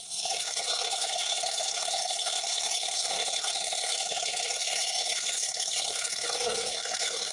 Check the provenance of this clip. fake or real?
fake